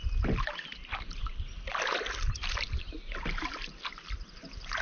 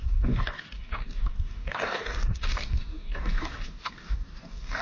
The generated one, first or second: second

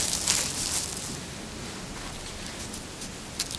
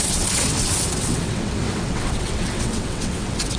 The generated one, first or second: second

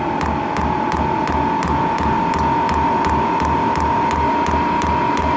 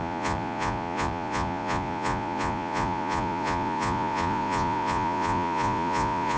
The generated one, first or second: second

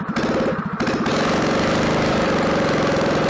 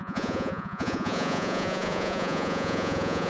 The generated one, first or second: second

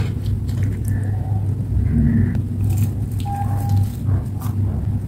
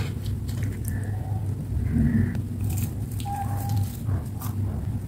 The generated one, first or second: second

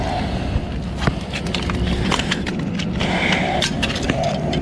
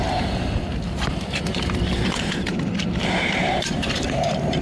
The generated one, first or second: second